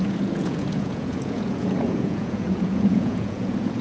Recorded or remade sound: remade